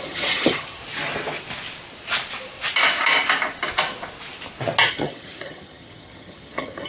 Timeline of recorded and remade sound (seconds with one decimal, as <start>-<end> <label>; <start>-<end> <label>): 0.0-0.8 remade; 0.8-4.9 recorded; 4.9-6.9 remade